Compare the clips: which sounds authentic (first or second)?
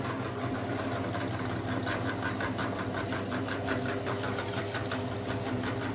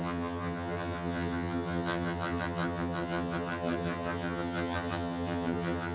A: first